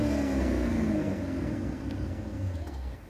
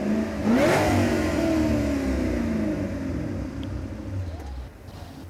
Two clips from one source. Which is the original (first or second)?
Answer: second